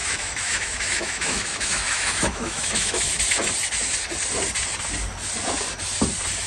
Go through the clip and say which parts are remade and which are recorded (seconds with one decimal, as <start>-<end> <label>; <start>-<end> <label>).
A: 0.0-3.2 remade; 3.2-6.5 recorded